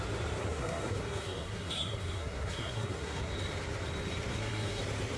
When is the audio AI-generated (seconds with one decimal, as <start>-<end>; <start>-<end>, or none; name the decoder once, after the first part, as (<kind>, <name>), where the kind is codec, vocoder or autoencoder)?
0.4-3.3 (codec, SNAC); 4.3-4.8